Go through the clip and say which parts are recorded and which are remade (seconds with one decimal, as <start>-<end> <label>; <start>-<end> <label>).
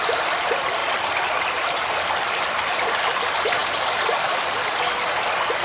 0.0-5.6 recorded